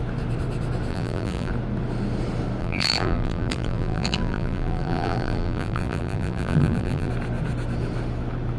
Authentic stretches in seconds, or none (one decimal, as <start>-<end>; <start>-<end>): 0.0-0.9; 1.5-2.6; 7.1-8.6